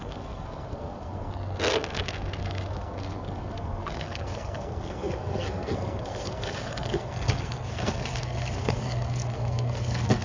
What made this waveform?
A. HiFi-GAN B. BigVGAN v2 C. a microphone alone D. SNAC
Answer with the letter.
D